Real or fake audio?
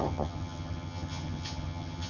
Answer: fake